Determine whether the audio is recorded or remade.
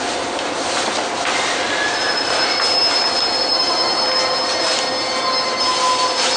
recorded